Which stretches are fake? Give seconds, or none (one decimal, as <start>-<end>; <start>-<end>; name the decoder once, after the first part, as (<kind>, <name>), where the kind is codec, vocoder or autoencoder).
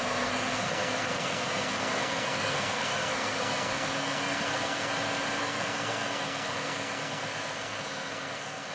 0.0-4.9 (codec, SNAC); 5.4-8.7